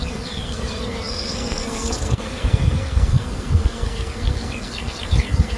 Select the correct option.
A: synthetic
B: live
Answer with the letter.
A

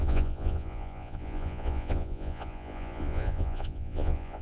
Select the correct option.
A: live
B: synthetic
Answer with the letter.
B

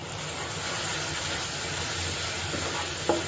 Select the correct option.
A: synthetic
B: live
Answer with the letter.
B